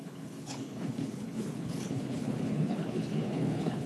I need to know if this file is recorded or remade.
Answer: remade